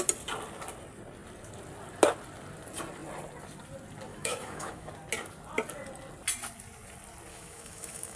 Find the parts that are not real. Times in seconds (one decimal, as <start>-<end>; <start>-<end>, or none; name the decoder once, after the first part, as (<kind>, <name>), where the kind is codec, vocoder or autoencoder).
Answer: 4.1-4.9 (autoencoder, DAC-VAE); 7.3-8.2